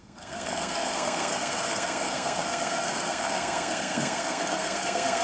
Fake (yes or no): yes